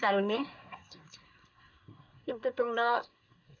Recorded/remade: remade